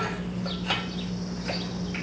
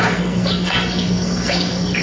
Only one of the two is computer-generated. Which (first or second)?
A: second